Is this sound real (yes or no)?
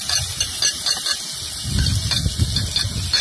yes